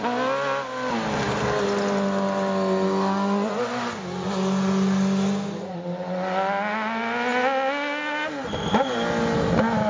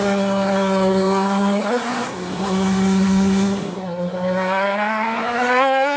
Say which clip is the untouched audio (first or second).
first